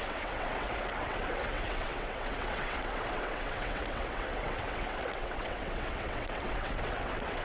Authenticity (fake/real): fake